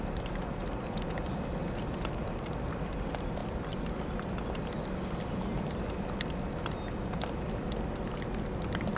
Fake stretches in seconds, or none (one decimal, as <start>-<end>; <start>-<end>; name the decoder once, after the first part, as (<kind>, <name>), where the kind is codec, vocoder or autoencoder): none